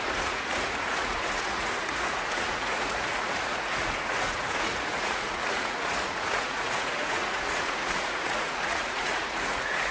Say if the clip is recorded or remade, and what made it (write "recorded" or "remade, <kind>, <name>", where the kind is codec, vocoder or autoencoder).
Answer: remade, vocoder, Vocos